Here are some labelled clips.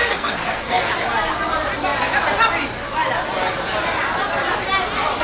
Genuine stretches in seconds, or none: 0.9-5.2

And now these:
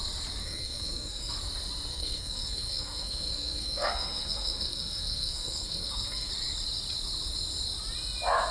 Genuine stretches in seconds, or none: 0.0-0.4; 1.3-1.9; 6.3-8.5